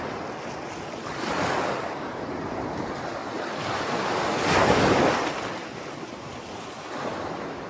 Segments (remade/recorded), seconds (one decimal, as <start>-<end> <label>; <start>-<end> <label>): 0.0-7.7 recorded